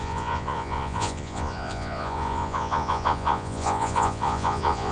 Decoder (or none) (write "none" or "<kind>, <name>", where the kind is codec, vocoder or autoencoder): vocoder, Vocos